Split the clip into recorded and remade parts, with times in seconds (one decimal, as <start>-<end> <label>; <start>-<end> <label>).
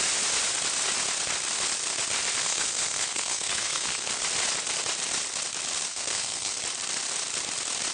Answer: 0.0-2.4 recorded; 2.4-4.2 remade; 4.2-5.9 recorded; 5.9-6.6 remade; 6.6-7.9 recorded